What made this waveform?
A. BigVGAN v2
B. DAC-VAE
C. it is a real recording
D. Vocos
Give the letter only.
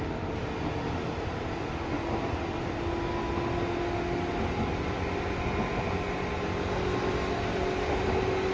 C